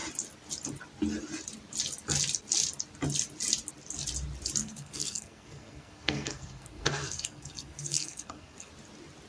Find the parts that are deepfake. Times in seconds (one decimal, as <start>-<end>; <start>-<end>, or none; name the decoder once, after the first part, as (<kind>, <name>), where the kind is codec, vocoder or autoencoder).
4.6-8.7 (codec, SNAC)